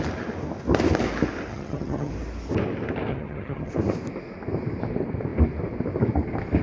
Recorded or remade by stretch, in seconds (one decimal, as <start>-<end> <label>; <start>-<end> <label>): 0.0-1.5 recorded; 1.5-2.1 remade; 2.1-3.1 recorded; 3.1-3.7 remade; 3.7-6.6 recorded